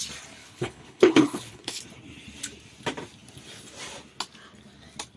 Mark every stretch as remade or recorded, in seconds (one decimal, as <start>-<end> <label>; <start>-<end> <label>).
0.0-0.4 recorded; 0.4-1.8 remade; 1.8-5.2 recorded